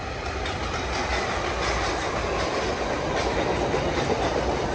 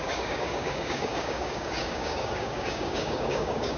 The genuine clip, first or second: first